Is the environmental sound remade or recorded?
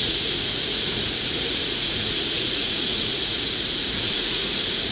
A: remade